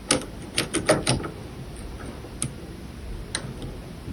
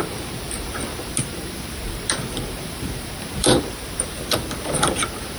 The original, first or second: first